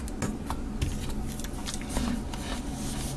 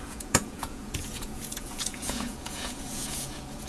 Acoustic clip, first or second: first